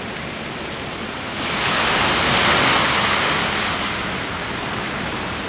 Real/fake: real